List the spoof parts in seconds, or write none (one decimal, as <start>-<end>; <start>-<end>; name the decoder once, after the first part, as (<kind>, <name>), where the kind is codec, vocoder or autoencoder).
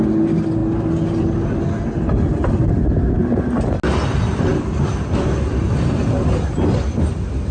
none